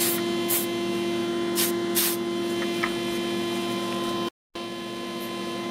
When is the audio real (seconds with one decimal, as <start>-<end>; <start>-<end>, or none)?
0.0-5.7